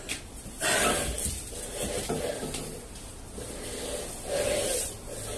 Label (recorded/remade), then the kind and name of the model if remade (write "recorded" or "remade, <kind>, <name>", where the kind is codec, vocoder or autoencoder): recorded